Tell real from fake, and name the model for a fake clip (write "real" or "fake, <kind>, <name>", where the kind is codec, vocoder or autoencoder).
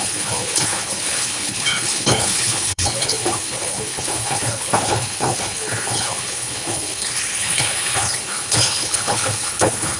fake, codec, HILCodec